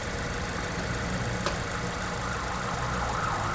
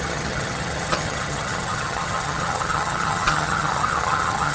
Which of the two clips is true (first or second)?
first